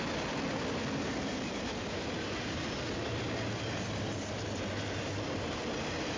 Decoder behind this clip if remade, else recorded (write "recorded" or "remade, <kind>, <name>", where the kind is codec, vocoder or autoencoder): recorded